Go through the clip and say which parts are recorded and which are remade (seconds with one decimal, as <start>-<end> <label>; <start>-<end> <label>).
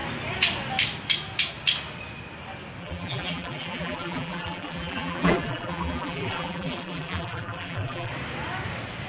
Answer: 0.0-2.8 recorded; 2.8-8.1 remade; 8.1-9.1 recorded